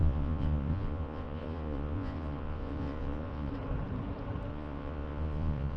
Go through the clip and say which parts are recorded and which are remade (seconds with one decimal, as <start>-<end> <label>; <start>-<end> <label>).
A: 0.0-3.5 remade; 3.5-4.5 recorded; 4.5-5.8 remade